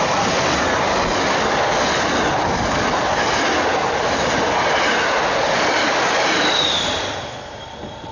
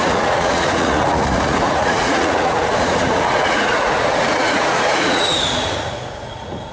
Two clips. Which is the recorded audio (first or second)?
first